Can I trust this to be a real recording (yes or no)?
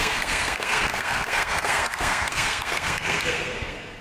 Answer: no